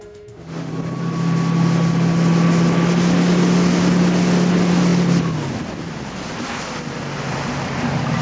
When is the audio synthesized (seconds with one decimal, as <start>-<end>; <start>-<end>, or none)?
0.0-0.7